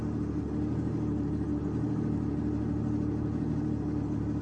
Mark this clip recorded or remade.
recorded